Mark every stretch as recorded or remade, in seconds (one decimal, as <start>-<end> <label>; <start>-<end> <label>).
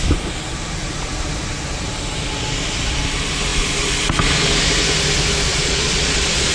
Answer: 0.0-5.5 recorded; 5.5-6.5 remade